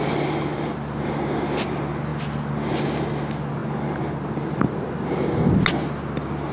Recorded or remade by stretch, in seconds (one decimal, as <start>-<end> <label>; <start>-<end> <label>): 0.0-6.5 recorded